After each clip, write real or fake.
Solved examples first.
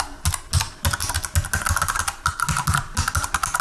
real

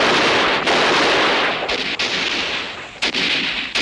real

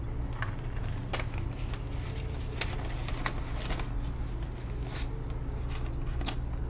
real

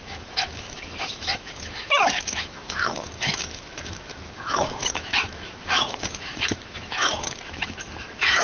fake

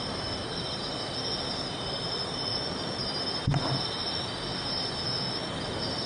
real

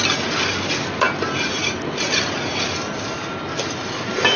real